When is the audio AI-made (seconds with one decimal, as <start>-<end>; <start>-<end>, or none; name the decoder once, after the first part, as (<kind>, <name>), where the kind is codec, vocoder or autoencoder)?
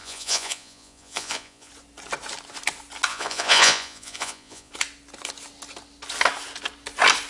0.0-1.7 (vocoder, Vocos); 3.1-4.7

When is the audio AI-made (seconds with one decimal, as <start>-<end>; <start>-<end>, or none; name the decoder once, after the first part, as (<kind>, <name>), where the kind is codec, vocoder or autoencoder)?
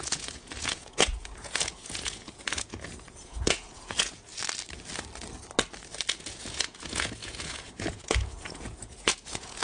0.0-4.3 (vocoder, Vocos); 6.1-9.6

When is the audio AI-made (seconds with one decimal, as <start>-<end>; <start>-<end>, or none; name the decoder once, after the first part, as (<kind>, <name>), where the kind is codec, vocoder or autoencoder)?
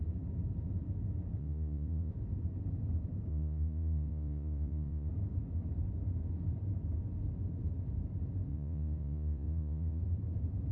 1.4-2.1 (vocoder, Vocos); 3.3-5.1; 8.5-10.0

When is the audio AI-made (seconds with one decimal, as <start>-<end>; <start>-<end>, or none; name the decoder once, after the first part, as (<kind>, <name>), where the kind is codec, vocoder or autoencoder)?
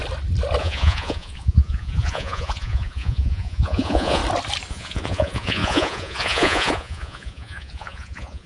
0.6-4.2 (vocoder, Vocos); 4.7-8.5